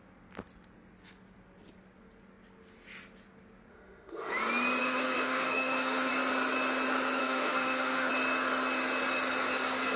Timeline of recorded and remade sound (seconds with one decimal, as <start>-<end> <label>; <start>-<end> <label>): 0.0-3.7 recorded; 3.7-4.3 remade; 4.3-4.8 recorded; 4.8-6.1 remade; 6.1-7.2 recorded; 7.2-8.1 remade; 8.1-10.0 recorded